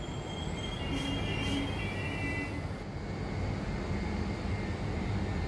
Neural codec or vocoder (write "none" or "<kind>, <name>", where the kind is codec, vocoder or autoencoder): none